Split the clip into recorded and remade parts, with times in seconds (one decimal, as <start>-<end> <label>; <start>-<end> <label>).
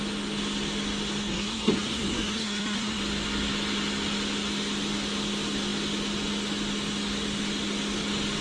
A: 0.0-1.2 recorded; 1.2-3.0 remade; 3.0-8.4 recorded